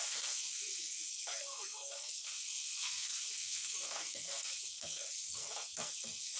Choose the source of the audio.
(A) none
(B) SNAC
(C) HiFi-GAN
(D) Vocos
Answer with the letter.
B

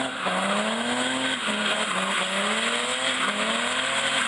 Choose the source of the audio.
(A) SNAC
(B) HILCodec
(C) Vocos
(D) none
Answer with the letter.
D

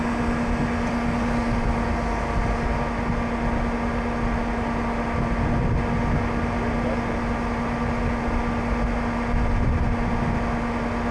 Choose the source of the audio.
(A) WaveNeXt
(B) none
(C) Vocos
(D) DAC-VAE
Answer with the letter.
B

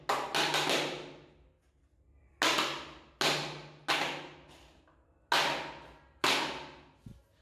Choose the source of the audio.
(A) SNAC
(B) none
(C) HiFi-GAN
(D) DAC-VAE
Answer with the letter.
B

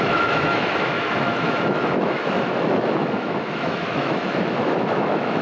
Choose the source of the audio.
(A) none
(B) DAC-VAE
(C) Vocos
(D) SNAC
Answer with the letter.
B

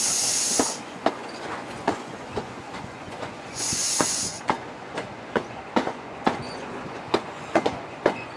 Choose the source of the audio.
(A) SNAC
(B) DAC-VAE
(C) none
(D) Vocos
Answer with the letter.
D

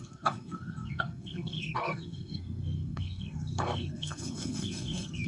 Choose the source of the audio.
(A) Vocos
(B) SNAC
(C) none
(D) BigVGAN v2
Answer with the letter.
B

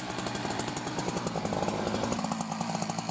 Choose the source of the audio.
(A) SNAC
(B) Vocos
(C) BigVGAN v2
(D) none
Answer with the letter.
D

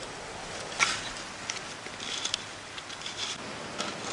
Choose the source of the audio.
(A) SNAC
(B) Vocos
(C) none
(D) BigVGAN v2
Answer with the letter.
C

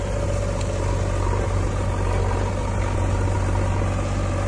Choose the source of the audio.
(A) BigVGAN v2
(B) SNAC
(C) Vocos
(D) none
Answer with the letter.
D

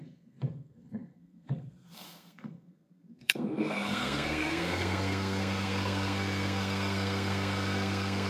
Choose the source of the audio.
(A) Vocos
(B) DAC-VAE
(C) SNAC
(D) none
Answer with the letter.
C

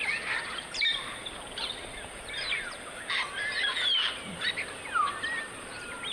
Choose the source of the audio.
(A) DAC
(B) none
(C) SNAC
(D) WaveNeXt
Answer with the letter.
B